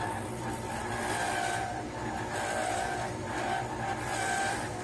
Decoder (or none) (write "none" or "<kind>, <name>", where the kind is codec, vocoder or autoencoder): none